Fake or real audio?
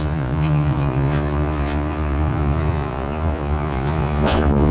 fake